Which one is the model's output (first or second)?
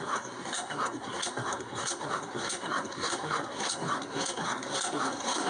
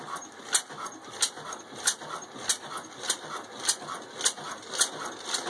first